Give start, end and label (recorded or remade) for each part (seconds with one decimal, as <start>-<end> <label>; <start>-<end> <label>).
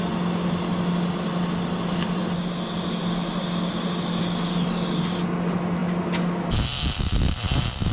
0.0-7.9 recorded